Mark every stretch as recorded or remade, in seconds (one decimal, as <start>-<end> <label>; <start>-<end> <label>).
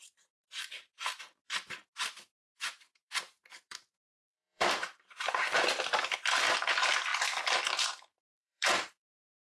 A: 0.0-1.0 remade; 1.0-2.3 recorded; 2.3-7.1 remade; 7.1-7.6 recorded; 7.6-9.5 remade